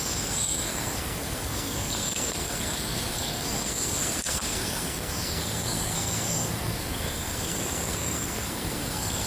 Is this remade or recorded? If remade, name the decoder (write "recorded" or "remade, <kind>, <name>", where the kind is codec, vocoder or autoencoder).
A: remade, codec, SNAC